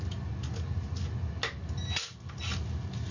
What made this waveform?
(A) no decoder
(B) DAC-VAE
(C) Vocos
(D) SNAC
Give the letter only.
A